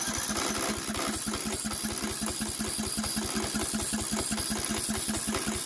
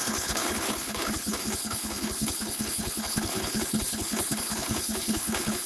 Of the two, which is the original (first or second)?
first